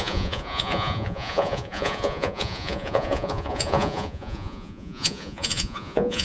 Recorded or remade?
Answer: remade